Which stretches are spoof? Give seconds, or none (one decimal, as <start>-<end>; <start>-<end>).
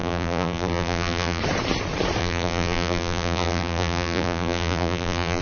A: 0.0-1.4; 2.2-5.4